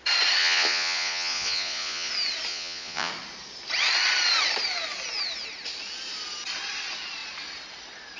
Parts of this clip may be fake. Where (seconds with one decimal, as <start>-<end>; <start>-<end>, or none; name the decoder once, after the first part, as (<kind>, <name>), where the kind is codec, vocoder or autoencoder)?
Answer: 0.4-2.1 (vocoder, Vocos); 2.5-3.1